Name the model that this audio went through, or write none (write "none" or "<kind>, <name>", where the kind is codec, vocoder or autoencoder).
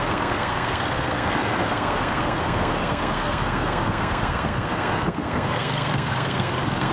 codec, SNAC